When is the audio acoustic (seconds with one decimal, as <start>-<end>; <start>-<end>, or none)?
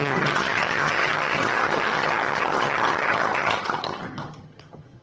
none